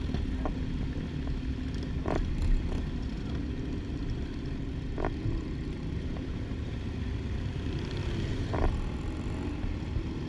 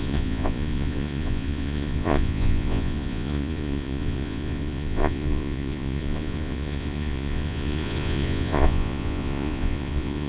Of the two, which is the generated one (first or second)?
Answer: second